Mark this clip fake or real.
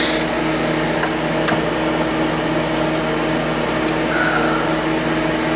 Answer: real